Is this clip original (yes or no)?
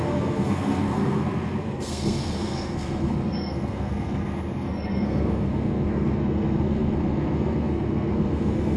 no